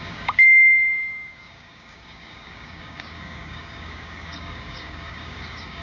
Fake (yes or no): yes